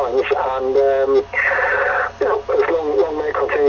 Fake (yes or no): no